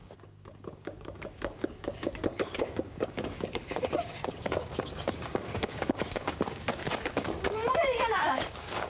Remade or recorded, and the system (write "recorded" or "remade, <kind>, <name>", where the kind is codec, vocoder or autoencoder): remade, codec, DAC